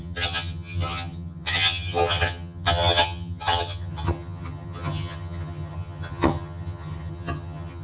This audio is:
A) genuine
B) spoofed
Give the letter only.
B